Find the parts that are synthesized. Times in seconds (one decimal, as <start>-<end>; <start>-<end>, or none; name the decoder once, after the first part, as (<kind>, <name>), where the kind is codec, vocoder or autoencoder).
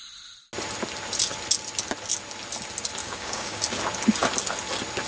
3.0-3.6 (codec, DAC)